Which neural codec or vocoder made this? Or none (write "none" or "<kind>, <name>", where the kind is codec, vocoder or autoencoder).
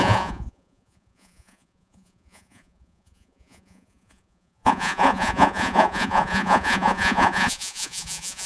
vocoder, Vocos